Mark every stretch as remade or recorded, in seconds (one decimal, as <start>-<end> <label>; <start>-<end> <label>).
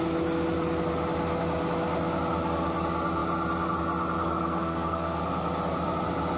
0.0-4.2 recorded; 4.2-5.2 remade; 5.2-6.4 recorded